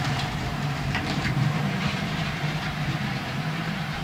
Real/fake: fake